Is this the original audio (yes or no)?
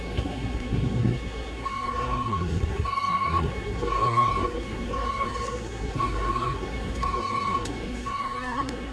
no